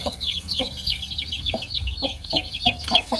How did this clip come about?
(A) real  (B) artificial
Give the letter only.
B